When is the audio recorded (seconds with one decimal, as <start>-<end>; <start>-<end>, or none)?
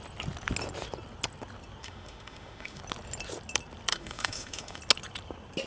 0.0-1.8; 2.8-3.9; 4.8-5.7